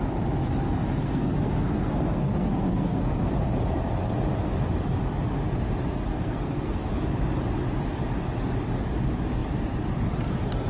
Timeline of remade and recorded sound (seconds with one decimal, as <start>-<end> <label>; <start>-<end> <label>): 0.0-1.0 recorded; 1.0-3.3 remade; 3.3-6.1 recorded; 6.1-6.9 remade; 6.9-10.7 recorded